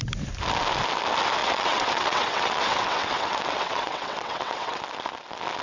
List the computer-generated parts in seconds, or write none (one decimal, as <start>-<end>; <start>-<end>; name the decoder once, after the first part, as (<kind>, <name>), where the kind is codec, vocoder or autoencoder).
1.4-4.8 (vocoder, WaveNeXt)